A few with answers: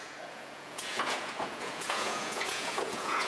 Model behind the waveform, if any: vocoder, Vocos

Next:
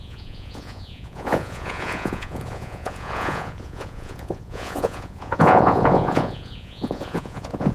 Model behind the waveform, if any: vocoder, Vocos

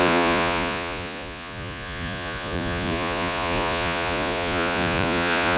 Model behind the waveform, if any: vocoder, Vocos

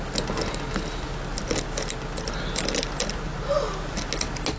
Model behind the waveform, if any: none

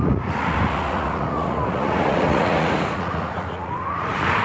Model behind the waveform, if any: vocoder, Vocos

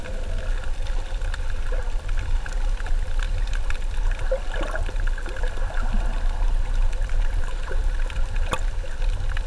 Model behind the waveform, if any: none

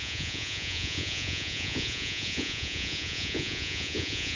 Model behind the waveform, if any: vocoder, Vocos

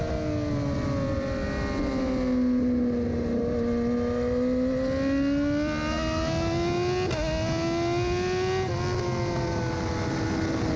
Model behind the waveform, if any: none